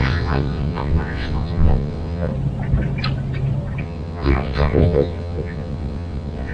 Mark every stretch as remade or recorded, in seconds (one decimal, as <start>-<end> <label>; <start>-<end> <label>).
0.0-2.3 remade; 2.3-3.8 recorded; 3.8-6.5 remade